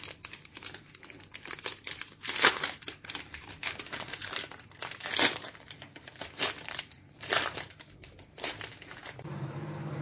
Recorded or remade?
remade